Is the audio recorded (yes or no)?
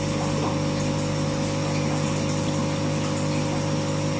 yes